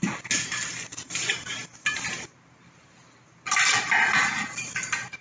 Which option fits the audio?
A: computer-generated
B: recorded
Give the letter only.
B